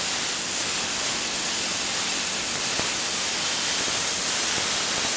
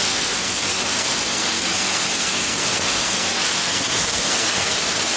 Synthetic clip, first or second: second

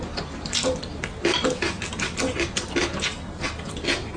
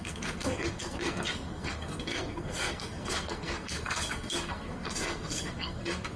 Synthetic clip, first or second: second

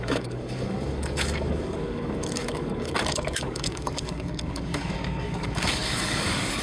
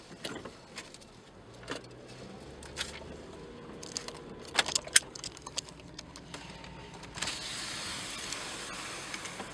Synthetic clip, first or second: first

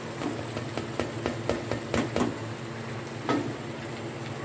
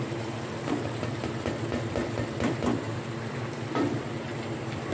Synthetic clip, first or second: second